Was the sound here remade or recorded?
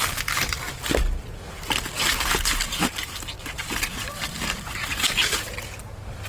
recorded